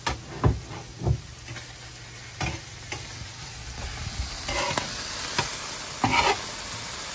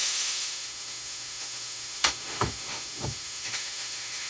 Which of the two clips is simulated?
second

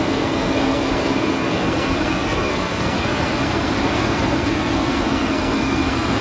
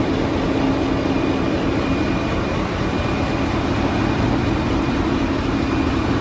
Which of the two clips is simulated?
first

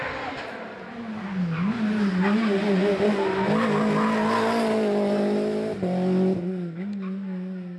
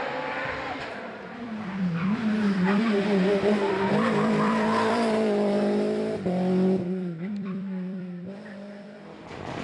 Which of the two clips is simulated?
second